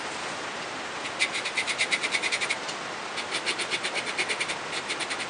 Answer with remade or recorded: recorded